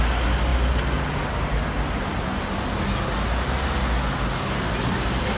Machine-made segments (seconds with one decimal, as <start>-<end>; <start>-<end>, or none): none